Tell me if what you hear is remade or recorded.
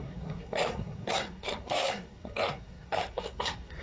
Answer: remade